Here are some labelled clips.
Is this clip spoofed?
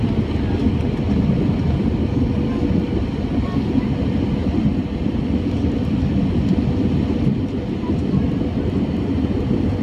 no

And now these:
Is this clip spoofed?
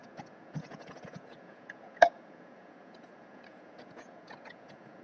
yes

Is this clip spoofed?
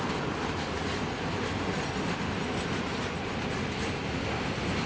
no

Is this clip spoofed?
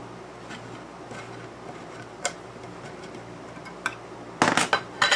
no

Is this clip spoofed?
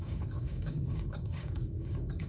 yes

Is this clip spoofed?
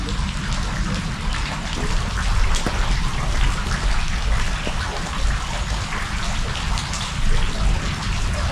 no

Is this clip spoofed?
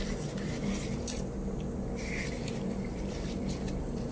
yes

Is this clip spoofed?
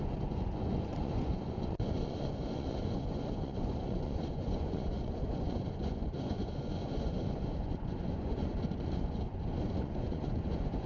yes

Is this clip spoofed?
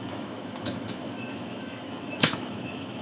yes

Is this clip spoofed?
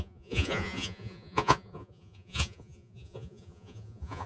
yes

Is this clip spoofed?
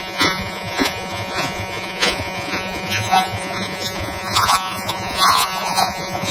yes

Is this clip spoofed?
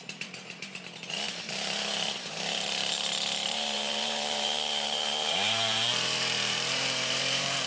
yes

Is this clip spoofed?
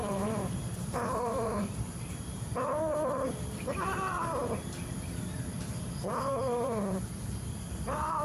yes